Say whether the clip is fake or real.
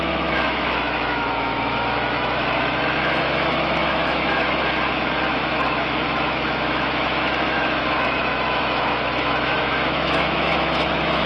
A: fake